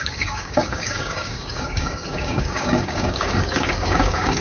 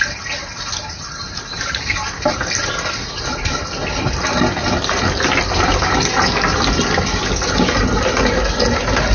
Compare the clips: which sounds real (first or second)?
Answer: second